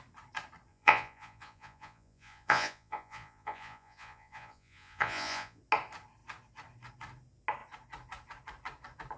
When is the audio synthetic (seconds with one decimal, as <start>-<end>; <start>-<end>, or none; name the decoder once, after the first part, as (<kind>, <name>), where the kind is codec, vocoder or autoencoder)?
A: 0.7-5.6 (vocoder, Vocos)